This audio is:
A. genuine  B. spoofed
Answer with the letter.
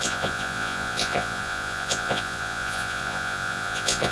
B